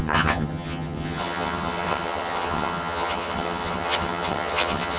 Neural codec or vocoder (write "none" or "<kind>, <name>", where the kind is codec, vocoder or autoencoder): vocoder, HiFi-GAN